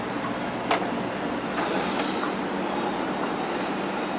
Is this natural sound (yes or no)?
yes